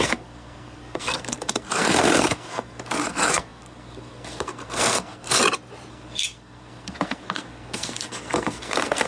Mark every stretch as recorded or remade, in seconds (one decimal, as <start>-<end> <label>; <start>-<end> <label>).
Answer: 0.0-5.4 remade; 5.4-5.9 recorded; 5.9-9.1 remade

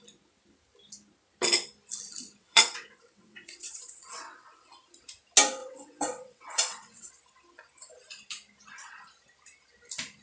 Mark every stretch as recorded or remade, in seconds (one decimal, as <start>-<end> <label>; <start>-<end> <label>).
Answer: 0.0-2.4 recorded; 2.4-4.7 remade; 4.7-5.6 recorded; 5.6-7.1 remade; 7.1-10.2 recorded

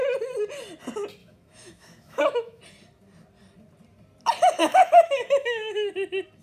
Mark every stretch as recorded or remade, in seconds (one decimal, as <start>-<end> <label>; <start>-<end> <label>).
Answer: 0.0-1.2 recorded; 1.2-2.6 remade; 2.6-4.6 recorded; 4.6-5.9 remade; 5.9-6.4 recorded

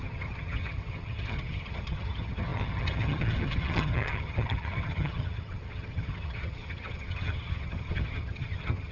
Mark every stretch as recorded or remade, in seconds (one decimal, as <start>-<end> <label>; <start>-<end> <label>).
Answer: 0.0-8.9 remade

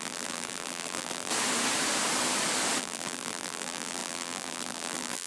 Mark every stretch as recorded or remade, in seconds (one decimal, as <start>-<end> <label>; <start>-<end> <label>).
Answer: 0.0-1.3 remade; 1.3-2.8 recorded; 2.8-5.3 remade

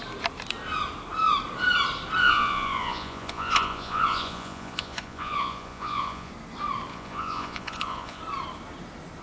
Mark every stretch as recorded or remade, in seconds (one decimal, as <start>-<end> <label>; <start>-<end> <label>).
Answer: 0.0-2.2 recorded; 2.2-6.3 remade; 6.3-6.9 recorded; 6.9-8.2 remade; 8.2-9.2 recorded